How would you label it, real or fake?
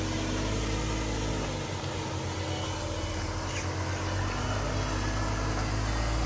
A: real